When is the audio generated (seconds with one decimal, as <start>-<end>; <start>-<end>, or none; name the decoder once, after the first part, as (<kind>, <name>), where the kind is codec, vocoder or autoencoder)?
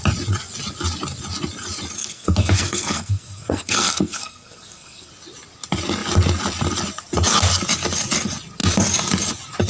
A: 2.0-5.1 (codec, SNAC)